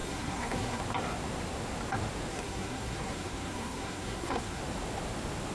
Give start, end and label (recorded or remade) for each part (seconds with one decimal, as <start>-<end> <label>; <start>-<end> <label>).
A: 0.0-0.8 remade; 0.8-2.3 recorded; 2.3-4.6 remade; 4.6-5.5 recorded